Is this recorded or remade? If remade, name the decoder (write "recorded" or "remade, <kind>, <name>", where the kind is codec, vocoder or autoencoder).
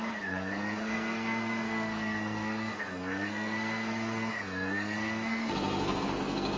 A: remade, codec, SNAC